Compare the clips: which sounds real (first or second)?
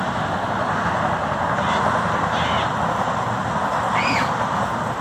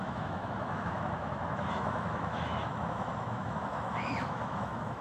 first